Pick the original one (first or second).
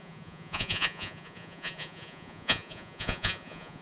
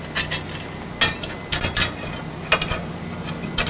second